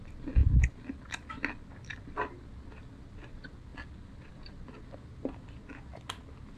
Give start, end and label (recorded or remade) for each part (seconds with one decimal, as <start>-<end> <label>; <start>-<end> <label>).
0.0-6.6 recorded